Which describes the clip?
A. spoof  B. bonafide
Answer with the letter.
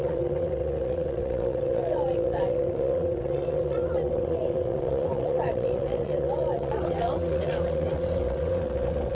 A